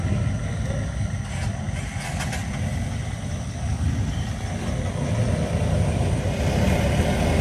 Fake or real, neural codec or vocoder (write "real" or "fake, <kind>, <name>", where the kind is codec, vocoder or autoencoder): real